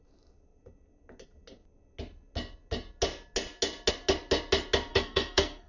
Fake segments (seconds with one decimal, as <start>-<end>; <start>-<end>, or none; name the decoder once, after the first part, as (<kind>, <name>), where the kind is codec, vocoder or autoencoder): 4.9-5.7 (codec, SNAC)